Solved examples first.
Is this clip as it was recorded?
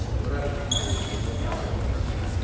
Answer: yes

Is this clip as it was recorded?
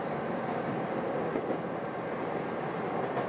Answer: yes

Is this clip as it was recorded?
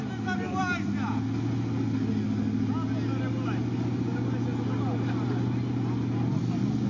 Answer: yes